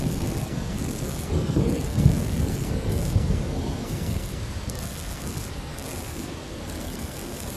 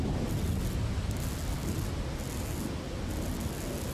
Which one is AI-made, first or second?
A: first